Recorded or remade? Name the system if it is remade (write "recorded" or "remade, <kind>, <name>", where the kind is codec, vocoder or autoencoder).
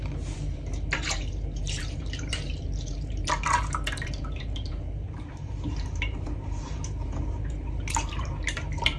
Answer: remade, vocoder, BigVGAN v2